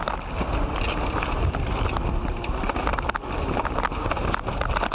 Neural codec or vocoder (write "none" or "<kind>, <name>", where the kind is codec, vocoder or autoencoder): none